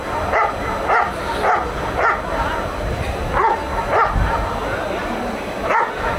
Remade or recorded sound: recorded